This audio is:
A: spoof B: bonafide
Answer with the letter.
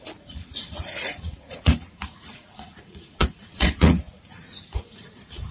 A